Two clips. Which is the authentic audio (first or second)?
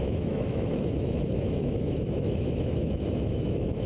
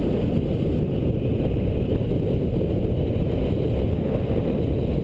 second